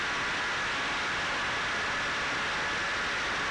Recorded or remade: recorded